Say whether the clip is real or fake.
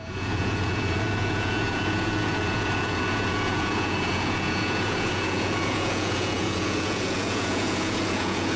fake